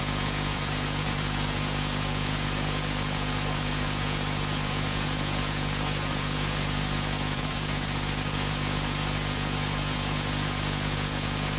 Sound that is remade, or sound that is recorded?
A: remade